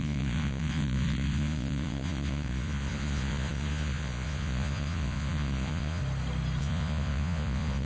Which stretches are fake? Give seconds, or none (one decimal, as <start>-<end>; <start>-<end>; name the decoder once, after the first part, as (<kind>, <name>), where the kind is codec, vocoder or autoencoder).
0.0-6.0 (vocoder, Vocos); 6.6-7.9